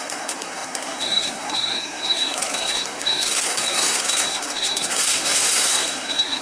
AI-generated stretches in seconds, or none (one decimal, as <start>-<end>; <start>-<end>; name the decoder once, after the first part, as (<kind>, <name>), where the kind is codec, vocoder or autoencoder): 0.0-6.4 (codec, SNAC)